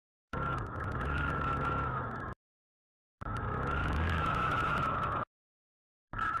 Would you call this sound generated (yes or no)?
yes